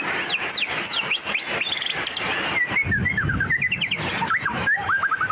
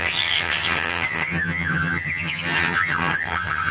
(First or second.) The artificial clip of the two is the second